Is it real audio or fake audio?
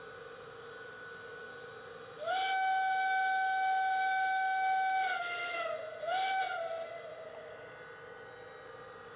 real